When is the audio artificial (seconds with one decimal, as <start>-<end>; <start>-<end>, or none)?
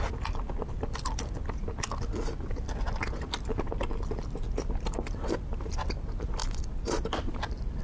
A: none